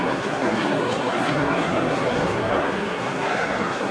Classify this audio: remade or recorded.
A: remade